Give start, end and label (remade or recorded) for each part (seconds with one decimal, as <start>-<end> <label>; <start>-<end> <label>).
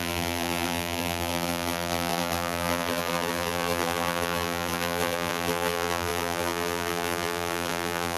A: 0.0-8.2 remade